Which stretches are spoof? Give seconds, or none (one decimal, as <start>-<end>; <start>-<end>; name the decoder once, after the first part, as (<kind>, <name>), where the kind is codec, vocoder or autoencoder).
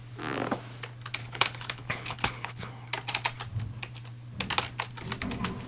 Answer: 1.2-2.7 (codec, HILCodec)